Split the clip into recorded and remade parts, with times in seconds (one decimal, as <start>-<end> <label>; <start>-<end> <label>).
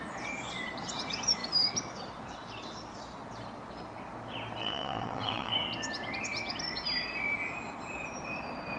0.0-4.6 recorded; 4.6-5.5 remade; 5.5-8.8 recorded